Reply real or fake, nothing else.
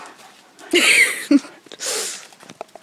real